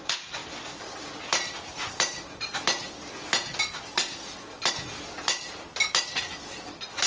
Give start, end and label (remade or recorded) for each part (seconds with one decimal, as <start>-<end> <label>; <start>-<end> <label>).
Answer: 0.0-7.1 recorded